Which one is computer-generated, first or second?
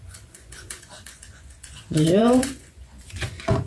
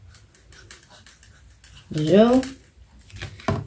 first